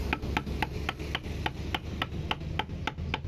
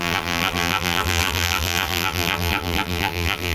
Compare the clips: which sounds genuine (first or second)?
first